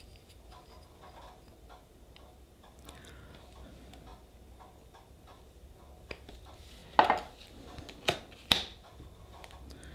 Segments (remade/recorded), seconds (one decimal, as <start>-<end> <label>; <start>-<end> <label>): 0.0-9.9 recorded